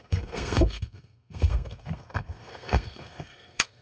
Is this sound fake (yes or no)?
yes